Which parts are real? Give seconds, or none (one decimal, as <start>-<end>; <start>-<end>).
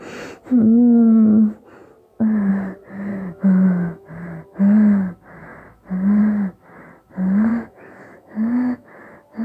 0.0-3.1; 4.1-7.5; 9.0-9.4